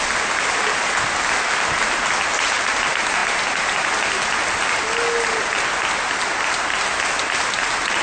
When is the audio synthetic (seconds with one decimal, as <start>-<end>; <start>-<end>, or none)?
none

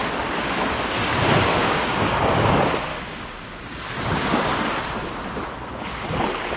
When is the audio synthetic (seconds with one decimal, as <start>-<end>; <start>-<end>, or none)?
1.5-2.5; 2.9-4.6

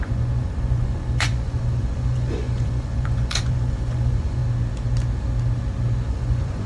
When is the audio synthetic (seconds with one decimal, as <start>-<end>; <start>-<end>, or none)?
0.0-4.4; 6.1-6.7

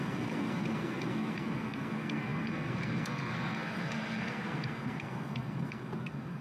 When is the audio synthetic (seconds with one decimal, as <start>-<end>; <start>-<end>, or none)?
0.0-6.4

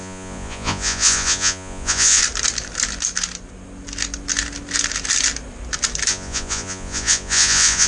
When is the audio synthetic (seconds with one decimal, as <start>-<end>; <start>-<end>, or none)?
0.0-2.2; 6.1-7.9

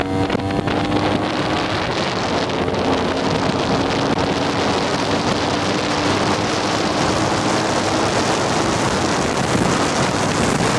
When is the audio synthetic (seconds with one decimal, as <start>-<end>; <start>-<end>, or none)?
4.9-8.0

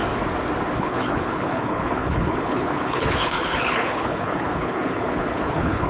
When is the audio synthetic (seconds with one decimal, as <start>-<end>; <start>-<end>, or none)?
0.8-5.9